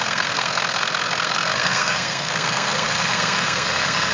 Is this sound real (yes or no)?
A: no